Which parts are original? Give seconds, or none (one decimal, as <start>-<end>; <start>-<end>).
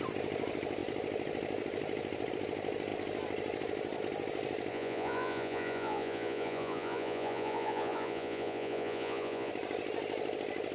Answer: 0.0-4.7; 9.5-10.7